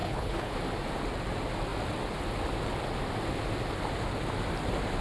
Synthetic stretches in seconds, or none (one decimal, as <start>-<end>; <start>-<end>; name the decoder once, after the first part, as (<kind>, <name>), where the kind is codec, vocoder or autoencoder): 0.0-0.5 (codec, HILCodec)